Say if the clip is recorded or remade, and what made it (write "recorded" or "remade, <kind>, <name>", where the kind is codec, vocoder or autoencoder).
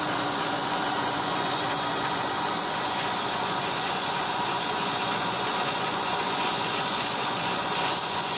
remade, vocoder, Vocos